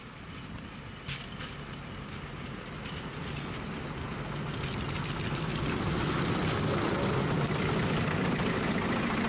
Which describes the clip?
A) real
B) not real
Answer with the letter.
A